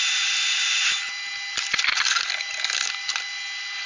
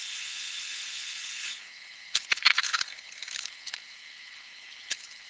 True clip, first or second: first